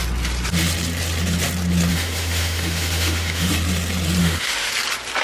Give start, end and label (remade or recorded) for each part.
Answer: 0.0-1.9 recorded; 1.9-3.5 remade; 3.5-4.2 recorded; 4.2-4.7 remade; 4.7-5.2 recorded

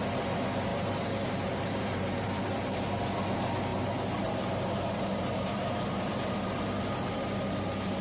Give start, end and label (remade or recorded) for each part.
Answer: 0.0-0.7 recorded; 0.7-3.0 remade; 3.0-3.7 recorded; 3.7-6.8 remade; 6.8-8.0 recorded

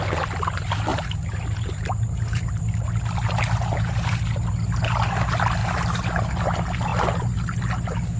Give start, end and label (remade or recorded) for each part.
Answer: 0.0-0.9 recorded; 0.9-2.9 remade; 2.9-8.2 recorded

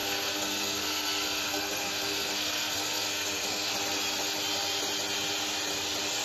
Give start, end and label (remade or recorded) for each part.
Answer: 0.0-3.7 remade; 3.7-6.2 recorded

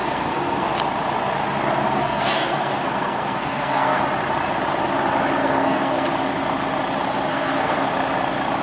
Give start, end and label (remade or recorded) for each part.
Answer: 0.0-0.7 remade; 0.7-1.9 recorded; 1.9-4.0 remade; 4.0-5.4 recorded; 5.4-6.1 remade; 6.1-7.3 recorded; 7.3-7.9 remade; 7.9-8.6 recorded

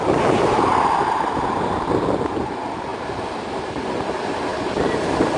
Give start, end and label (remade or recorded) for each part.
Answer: 0.0-5.4 recorded

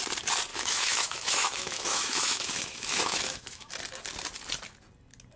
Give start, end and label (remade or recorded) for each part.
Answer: 0.0-0.5 recorded; 0.5-3.7 remade; 3.7-5.4 recorded